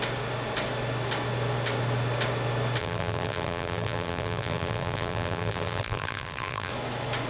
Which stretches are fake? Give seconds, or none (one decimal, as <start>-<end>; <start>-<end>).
2.8-6.7